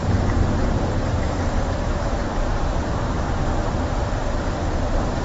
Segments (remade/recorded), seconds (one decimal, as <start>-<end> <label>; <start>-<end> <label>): 0.0-2.7 remade; 2.7-5.2 recorded